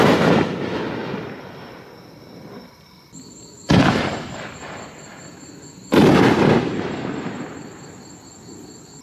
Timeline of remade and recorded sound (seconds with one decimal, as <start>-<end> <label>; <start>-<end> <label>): 0.0-1.0 recorded; 1.0-1.5 remade; 1.5-9.0 recorded